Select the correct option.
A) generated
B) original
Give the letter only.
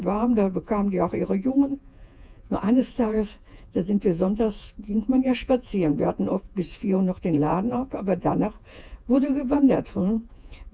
A